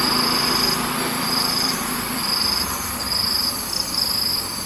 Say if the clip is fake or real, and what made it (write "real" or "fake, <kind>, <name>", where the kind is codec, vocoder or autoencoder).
fake, vocoder, BigVGAN v2